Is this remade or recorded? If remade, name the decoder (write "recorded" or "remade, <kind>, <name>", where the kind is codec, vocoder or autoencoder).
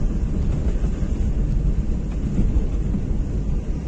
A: recorded